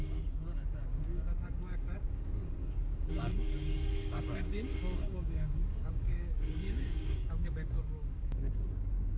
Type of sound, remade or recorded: remade